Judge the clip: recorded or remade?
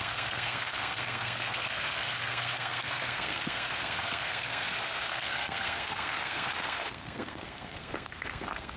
remade